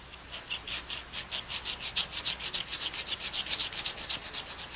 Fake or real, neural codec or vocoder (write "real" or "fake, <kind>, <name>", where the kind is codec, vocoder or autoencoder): real